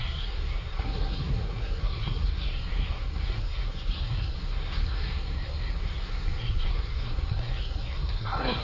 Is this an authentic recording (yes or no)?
no